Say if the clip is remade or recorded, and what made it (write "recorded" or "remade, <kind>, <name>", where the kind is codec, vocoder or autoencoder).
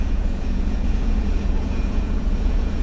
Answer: remade, vocoder, Vocos